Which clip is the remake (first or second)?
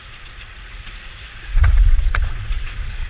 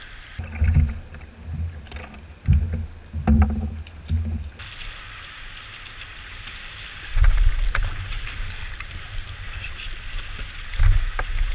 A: first